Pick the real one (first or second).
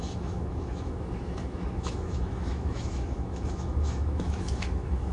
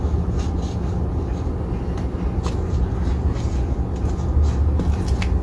second